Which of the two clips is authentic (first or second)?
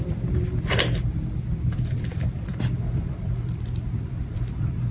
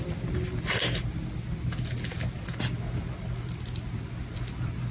second